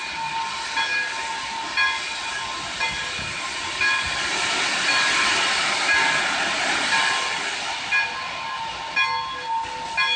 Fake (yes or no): no